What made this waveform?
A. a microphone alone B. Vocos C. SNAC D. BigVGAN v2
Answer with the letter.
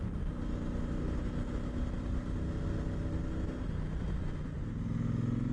A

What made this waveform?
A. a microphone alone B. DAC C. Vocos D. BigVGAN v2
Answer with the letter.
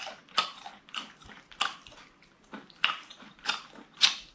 D